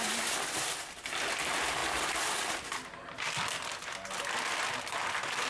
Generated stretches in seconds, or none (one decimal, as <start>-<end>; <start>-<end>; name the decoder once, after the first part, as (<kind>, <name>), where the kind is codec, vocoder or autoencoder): none